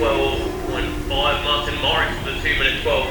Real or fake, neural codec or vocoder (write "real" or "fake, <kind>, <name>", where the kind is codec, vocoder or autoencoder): real